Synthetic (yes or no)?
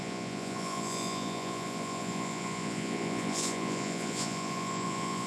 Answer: yes